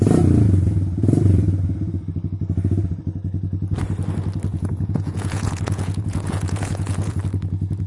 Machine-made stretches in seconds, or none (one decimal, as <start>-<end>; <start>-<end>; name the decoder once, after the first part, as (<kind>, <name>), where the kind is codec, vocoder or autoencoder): 4.5-7.2 (vocoder, Vocos)